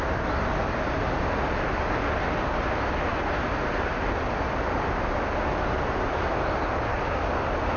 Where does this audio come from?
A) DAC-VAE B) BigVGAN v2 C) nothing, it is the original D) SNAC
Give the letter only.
C